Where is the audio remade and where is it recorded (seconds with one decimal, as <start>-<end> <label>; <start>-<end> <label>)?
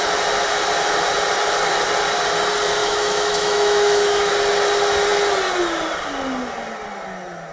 0.0-2.8 recorded; 2.8-4.3 remade; 4.3-7.5 recorded